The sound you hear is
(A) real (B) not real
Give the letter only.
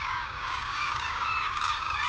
B